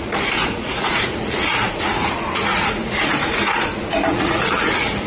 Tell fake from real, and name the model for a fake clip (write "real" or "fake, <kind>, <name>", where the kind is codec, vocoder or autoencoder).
fake, vocoder, Vocos